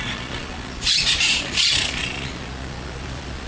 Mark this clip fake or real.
fake